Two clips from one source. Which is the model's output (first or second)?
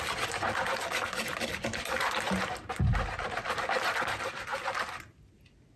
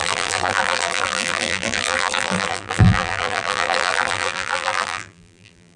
second